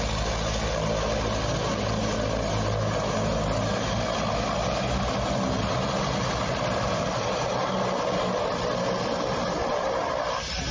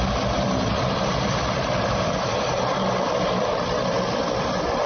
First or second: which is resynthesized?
second